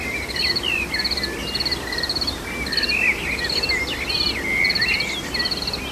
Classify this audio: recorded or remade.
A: recorded